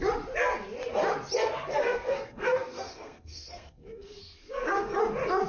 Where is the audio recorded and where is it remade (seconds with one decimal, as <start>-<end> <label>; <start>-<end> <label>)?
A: 0.0-1.7 recorded; 1.7-5.0 remade; 5.0-5.5 recorded